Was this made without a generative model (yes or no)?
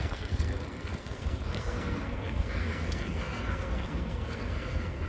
no